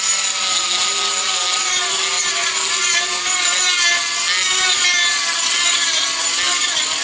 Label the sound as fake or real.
real